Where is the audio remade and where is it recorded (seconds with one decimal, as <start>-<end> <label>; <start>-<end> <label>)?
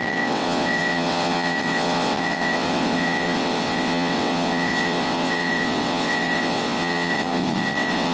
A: 0.0-8.1 remade